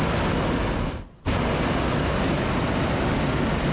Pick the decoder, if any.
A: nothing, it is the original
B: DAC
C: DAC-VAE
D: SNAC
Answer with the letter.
A